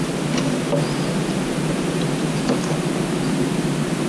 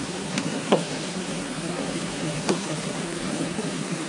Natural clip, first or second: first